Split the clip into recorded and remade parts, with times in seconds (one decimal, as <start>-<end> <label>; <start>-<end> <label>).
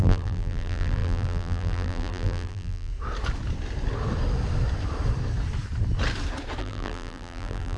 0.0-2.9 remade; 2.9-6.6 recorded; 6.6-7.8 remade